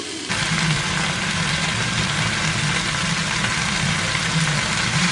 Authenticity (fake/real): real